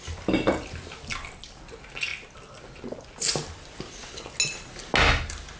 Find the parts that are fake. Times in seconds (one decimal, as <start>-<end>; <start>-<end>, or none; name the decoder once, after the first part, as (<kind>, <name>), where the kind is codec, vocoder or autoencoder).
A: none